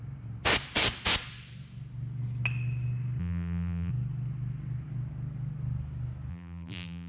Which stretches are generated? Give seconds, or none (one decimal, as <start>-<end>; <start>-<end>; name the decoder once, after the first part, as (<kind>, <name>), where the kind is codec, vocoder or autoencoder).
3.2-3.9 (vocoder, BigVGAN v2); 6.3-7.1